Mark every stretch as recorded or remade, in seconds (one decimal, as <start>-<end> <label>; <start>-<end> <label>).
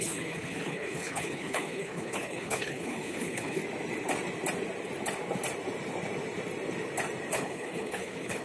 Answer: 0.0-3.6 remade; 3.6-7.3 recorded; 7.3-8.4 remade